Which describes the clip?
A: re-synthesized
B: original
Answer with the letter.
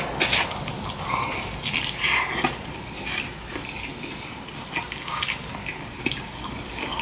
B